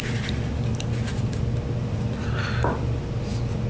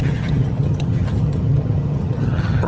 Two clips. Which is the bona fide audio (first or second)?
first